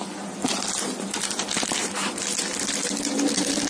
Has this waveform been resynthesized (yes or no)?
no